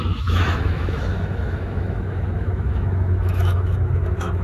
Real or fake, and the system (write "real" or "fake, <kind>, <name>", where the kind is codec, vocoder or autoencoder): fake, autoencoder, DAC-VAE